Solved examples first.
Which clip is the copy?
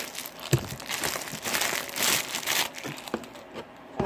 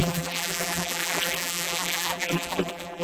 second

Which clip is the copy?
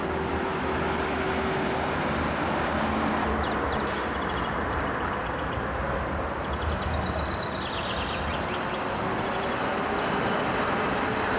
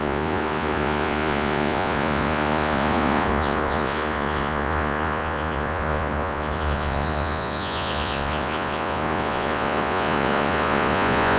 second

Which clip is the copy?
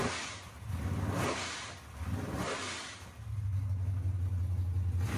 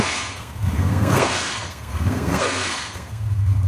second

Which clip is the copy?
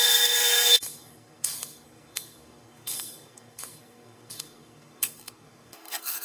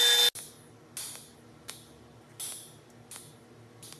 first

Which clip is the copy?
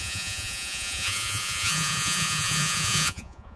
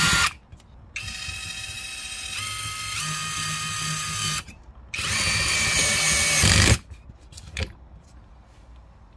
first